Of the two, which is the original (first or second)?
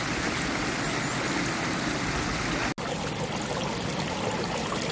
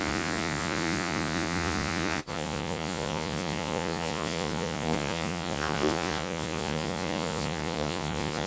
first